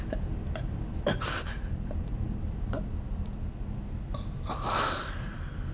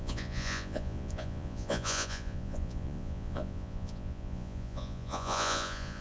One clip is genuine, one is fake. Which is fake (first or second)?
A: second